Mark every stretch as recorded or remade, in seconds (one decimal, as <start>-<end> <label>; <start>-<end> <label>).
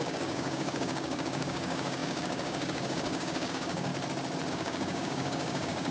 0.0-3.9 remade; 3.9-4.5 recorded; 4.5-5.9 remade